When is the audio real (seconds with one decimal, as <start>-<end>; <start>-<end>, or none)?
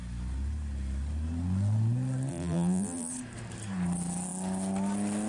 0.0-2.3; 3.1-5.3